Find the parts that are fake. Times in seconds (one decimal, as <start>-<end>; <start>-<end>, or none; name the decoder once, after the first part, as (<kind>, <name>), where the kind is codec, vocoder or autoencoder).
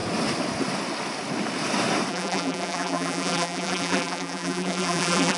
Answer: 2.1-5.4 (vocoder, BigVGAN v2)